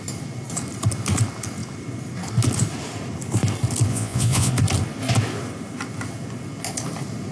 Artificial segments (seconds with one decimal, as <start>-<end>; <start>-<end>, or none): 3.9-4.5